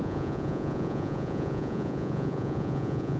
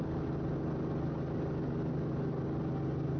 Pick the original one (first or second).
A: second